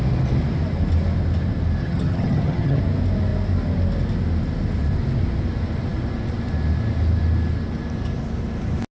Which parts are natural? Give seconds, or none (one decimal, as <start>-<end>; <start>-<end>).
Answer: 0.0-1.8; 2.8-8.9